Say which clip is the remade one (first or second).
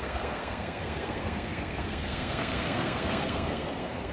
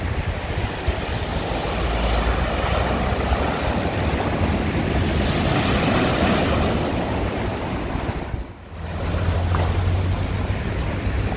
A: first